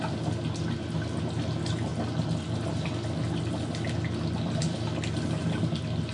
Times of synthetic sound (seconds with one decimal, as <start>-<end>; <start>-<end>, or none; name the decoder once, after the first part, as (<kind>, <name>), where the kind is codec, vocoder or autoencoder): none